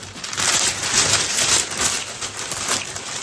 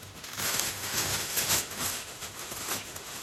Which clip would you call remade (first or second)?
second